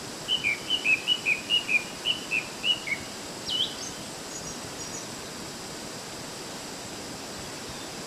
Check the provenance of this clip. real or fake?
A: real